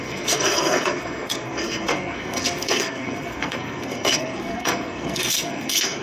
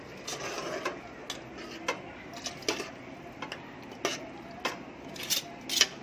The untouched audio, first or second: second